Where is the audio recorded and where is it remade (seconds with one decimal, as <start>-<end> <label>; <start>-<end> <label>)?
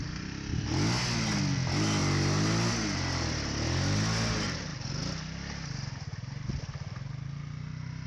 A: 0.0-8.1 recorded